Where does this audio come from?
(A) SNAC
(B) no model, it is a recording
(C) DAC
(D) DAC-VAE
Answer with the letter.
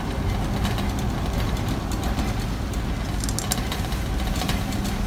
B